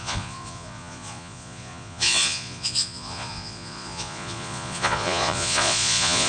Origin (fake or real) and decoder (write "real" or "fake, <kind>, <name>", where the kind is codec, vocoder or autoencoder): fake, vocoder, Vocos